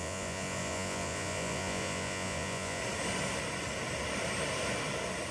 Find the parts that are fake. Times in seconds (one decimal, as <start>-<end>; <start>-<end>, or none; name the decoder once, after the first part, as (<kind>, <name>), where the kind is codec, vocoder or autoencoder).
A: 0.0-2.8 (vocoder, Vocos)